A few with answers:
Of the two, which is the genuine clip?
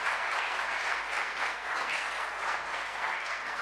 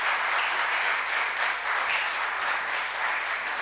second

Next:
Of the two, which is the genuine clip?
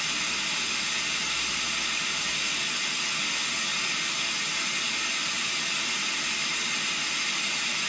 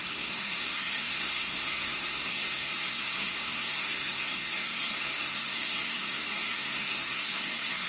first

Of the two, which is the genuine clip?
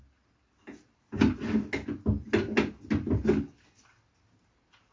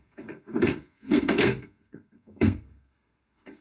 first